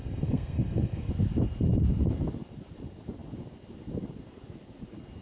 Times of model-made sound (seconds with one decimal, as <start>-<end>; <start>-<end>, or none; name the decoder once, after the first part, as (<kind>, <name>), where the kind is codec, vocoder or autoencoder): 0.0-1.1 (codec, SNAC)